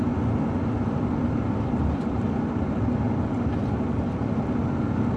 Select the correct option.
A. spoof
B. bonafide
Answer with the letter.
B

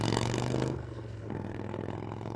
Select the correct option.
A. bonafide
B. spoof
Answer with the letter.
B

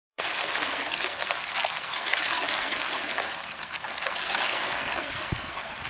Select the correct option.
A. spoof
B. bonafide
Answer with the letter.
A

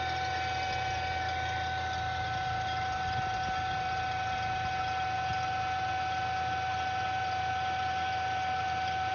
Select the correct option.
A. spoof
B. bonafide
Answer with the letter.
B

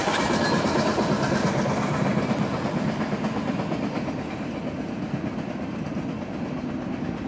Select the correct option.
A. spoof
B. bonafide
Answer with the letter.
B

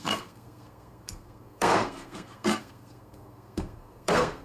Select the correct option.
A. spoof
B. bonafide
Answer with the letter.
A